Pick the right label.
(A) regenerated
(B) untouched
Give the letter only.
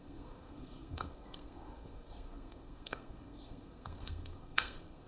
A